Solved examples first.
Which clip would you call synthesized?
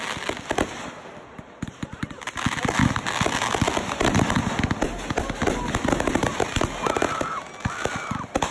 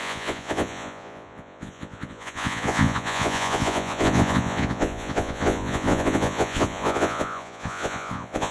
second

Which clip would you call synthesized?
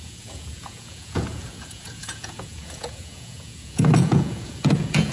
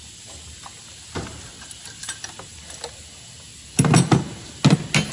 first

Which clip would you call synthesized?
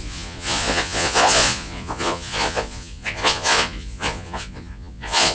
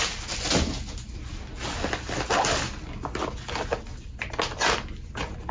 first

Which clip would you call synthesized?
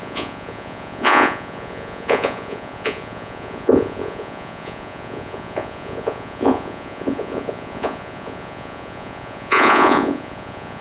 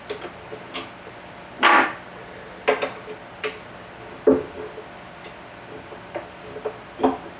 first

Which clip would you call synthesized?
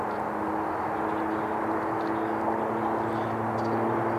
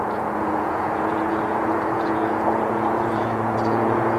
second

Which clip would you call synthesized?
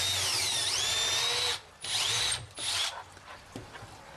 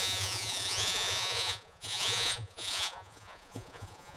second